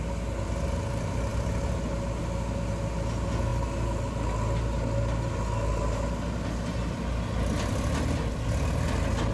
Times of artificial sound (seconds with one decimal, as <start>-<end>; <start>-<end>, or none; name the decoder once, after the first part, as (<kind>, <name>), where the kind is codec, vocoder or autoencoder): none